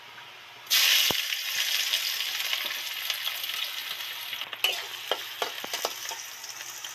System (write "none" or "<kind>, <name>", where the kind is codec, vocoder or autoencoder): none